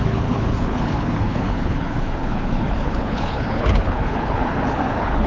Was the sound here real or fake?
fake